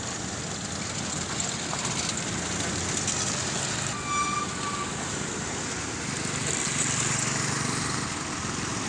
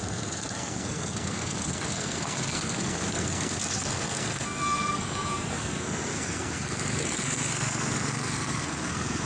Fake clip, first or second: second